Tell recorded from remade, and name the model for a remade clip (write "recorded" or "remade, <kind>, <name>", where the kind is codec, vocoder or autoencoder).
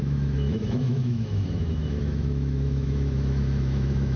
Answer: remade, autoencoder, DAC-VAE